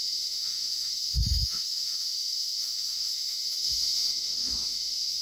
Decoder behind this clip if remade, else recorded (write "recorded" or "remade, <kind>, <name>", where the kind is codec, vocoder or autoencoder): remade, autoencoder, DAC-VAE